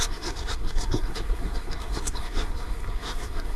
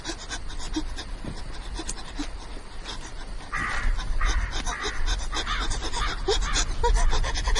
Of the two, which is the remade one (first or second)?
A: first